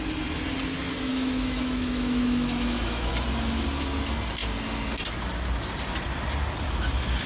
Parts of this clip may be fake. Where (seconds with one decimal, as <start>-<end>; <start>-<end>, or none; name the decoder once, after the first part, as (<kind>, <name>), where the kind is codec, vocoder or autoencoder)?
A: 1.1-3.1 (autoencoder, DAC-VAE)